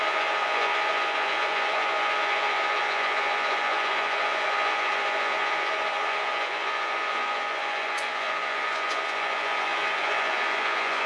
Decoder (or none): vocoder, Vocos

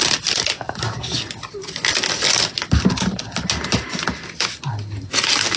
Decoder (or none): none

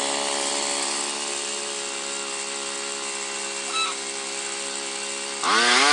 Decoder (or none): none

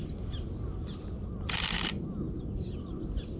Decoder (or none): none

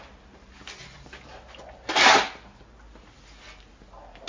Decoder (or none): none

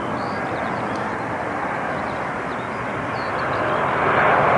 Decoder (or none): none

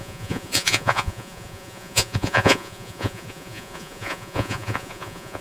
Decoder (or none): vocoder, Vocos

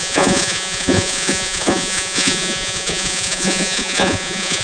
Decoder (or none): vocoder, Vocos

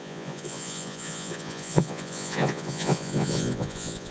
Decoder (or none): vocoder, Vocos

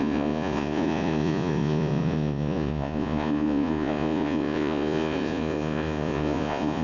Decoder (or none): vocoder, Vocos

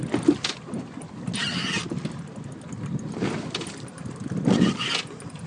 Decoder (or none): none